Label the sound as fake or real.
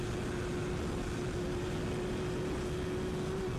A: real